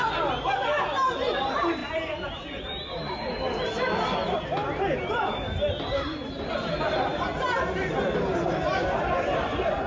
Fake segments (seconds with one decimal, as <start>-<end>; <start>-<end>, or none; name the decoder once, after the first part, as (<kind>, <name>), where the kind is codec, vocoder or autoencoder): none